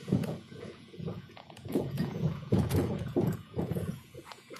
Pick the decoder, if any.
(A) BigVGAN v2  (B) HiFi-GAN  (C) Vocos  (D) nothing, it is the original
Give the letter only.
C